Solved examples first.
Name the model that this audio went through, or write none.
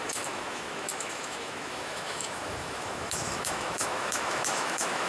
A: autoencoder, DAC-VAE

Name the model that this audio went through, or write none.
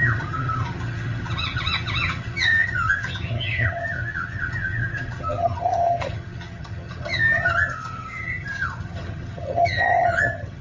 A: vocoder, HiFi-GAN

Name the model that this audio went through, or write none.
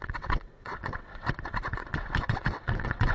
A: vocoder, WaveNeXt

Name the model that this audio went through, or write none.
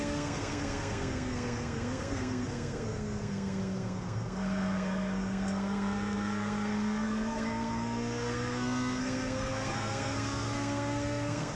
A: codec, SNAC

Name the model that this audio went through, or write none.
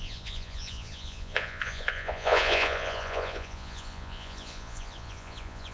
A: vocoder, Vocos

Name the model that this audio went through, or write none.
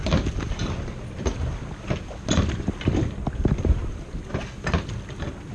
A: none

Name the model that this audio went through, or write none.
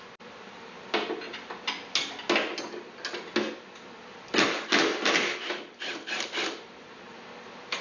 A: none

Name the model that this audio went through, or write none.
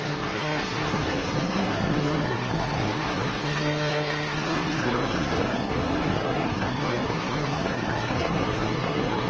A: codec, SNAC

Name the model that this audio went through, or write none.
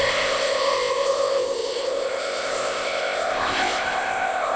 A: codec, ZipCodec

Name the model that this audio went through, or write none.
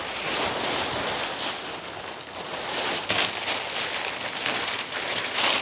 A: none